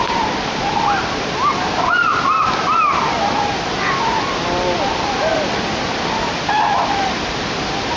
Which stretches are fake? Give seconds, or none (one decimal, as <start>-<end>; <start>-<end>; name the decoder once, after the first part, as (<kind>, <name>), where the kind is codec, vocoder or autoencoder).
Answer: 0.0-2.1 (vocoder, BigVGAN v2); 4.2-8.0

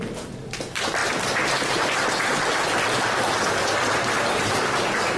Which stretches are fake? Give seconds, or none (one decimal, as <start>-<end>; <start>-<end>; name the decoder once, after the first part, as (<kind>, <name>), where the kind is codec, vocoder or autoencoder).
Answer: 0.0-1.0 (vocoder, BigVGAN v2); 4.1-5.2

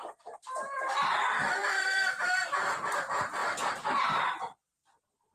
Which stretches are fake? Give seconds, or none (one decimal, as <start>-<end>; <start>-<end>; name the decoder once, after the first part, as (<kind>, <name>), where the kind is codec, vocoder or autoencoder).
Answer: 1.6-3.0 (vocoder, BigVGAN v2)

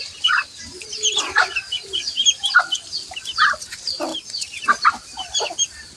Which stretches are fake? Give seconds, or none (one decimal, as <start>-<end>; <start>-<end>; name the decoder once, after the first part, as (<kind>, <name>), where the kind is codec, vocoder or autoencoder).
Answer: 0.0-6.0 (vocoder, BigVGAN v2)

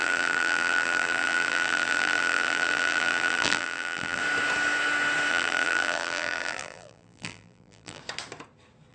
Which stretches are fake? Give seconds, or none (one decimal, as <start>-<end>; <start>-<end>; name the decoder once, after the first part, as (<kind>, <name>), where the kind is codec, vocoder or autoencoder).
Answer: 0.0-4.2 (vocoder, BigVGAN v2); 5.3-8.0

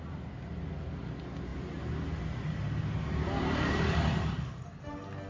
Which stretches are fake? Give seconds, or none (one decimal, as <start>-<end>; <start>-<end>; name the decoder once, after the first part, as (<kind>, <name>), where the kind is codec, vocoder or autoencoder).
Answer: 1.5-4.3 (vocoder, BigVGAN v2)

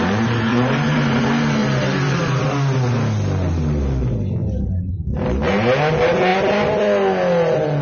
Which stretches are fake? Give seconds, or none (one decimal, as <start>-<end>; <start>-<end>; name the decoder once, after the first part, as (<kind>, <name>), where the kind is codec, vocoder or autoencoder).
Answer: 0.5-1.2 (vocoder, BigVGAN v2); 1.6-2.4; 4.4-5.5

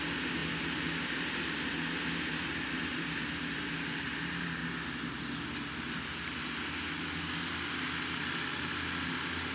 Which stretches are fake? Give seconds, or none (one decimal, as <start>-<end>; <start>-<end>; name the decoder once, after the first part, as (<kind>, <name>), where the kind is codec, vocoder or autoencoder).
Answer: 0.0-4.6 (vocoder, BigVGAN v2); 9.1-9.5